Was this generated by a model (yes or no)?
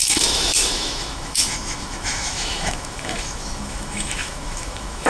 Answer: yes